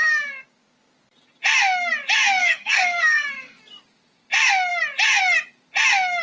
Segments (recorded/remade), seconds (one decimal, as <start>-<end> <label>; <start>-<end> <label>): 0.0-2.4 recorded; 2.4-3.6 remade; 3.6-6.2 recorded